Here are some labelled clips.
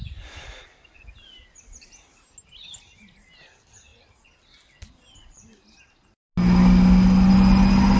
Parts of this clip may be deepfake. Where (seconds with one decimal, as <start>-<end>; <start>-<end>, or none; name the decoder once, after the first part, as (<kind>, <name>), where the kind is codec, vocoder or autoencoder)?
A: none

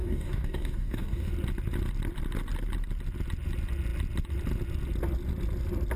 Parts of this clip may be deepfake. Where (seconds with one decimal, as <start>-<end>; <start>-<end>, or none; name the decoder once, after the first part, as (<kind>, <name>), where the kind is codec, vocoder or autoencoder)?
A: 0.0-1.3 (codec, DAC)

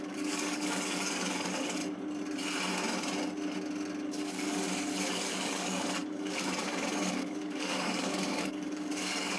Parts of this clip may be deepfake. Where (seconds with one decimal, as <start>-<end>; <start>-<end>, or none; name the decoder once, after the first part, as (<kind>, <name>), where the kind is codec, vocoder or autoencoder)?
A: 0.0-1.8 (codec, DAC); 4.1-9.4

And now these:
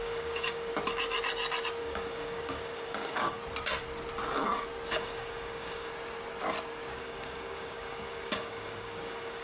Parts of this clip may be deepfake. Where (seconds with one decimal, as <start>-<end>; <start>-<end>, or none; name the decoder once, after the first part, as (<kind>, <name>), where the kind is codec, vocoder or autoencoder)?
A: 0.0-0.7 (codec, DAC); 1.8-3.4; 4.9-5.9; 7.0-9.4